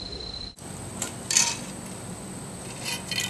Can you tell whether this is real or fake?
fake